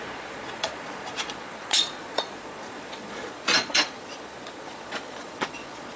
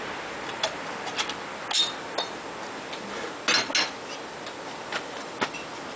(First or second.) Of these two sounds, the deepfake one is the first